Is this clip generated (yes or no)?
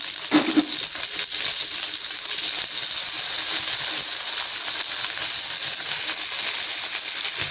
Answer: no